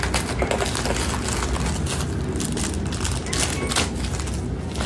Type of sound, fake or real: real